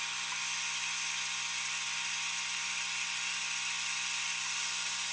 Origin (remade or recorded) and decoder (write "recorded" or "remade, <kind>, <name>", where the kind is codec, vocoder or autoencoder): recorded